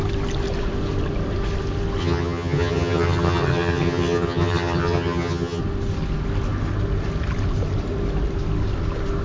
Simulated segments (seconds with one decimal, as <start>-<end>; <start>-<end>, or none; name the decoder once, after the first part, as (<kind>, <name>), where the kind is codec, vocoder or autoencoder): 2.0-5.6 (vocoder, HiFi-GAN)